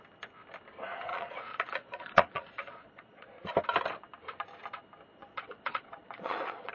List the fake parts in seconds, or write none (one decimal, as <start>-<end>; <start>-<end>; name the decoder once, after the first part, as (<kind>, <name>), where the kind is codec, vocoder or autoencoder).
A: 1.1-3.5 (vocoder, Vocos); 5.2-6.7